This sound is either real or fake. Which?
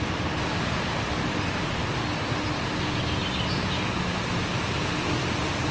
real